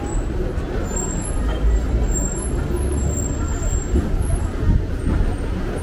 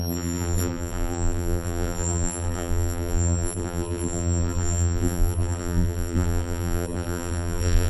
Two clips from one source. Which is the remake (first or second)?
second